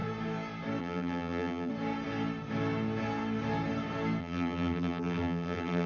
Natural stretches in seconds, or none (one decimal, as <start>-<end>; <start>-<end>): 0.0-0.8; 1.7-4.2